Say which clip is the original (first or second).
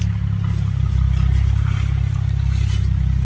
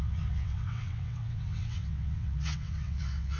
first